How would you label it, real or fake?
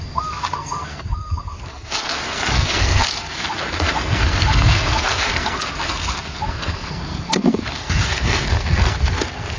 fake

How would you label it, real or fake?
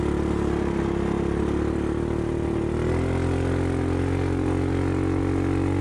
real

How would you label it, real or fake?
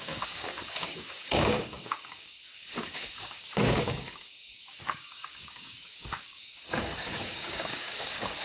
fake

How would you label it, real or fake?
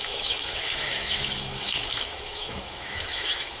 fake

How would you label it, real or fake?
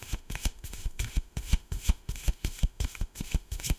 fake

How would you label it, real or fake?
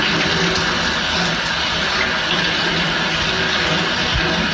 real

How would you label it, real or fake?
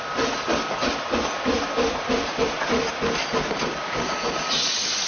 real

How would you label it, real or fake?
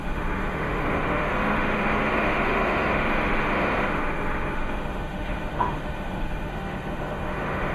fake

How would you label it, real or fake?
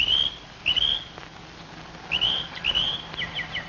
real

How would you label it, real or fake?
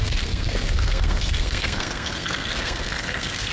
fake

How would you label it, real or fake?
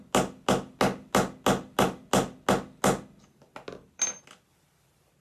real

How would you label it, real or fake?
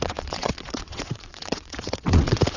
fake